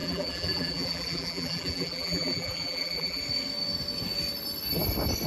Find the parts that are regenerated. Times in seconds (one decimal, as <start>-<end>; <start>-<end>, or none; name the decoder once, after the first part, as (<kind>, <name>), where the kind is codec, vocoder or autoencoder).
0.0-3.2 (vocoder, BigVGAN v2)

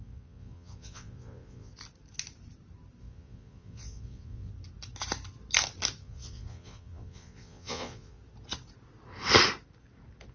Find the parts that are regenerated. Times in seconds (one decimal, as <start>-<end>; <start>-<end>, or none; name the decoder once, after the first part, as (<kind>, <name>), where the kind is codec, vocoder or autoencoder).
0.0-1.7 (vocoder, Vocos); 3.0-4.5; 6.0-8.2

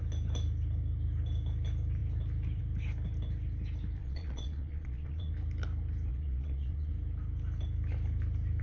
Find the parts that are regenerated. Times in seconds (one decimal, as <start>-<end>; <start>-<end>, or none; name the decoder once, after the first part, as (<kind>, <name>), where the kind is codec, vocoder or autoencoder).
4.0-5.3 (vocoder, Vocos); 6.1-6.9

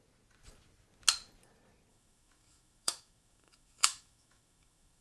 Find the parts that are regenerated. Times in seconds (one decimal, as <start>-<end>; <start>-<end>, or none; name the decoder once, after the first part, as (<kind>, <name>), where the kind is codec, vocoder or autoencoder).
1.9-5.0 (autoencoder, DAC-VAE)

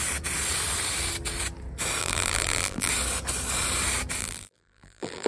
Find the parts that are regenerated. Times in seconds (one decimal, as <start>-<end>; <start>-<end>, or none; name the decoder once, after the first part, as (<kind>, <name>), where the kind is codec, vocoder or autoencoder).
2.0-2.9 (vocoder, BigVGAN v2); 4.2-5.3

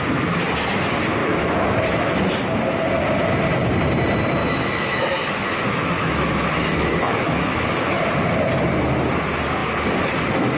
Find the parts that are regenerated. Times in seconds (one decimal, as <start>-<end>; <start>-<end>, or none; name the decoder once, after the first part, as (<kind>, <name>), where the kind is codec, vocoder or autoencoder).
1.2-2.3 (autoencoder, DAC-VAE); 4.4-8.0

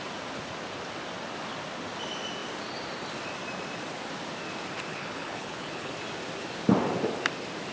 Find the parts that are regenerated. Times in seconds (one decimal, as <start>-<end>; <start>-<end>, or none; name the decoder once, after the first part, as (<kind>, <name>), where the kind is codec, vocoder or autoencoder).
4.9-5.9 (codec, HILCodec)